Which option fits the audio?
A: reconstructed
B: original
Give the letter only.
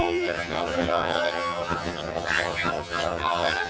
A